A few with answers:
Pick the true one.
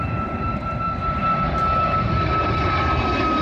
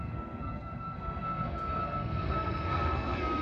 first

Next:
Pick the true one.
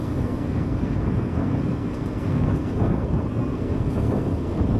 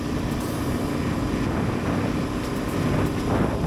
second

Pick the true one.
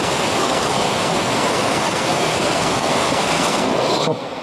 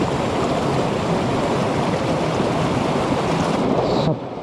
second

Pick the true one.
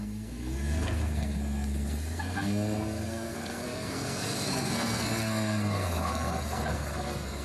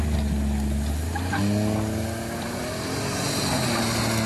second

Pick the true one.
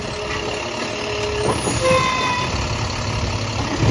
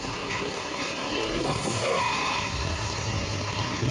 first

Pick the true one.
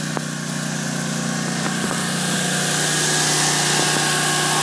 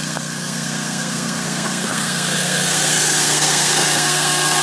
first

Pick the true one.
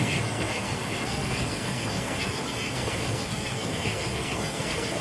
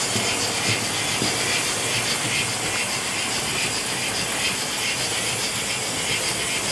second